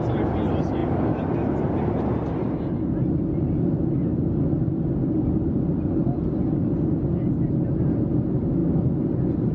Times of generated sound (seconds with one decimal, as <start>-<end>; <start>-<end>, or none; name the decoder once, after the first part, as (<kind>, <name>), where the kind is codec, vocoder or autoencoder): none